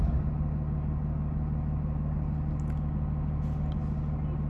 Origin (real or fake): real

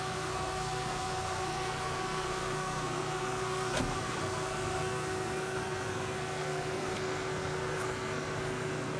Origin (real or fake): fake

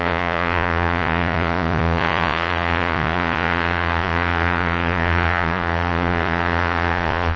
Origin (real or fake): fake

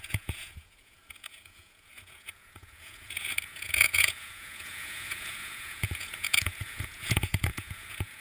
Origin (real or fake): fake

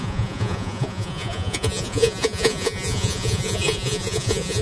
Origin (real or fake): fake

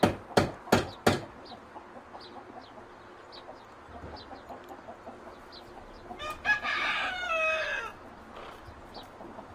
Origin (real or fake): real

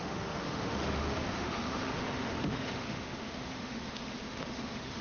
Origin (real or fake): fake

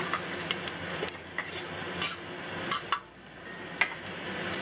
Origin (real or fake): real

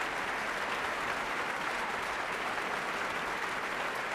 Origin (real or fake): real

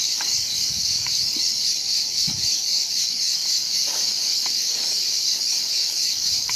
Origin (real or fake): fake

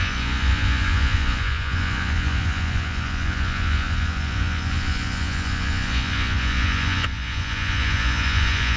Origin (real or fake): fake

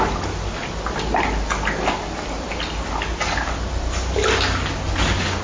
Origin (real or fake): real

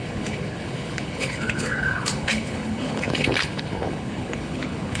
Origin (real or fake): fake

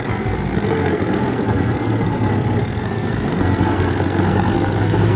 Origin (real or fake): fake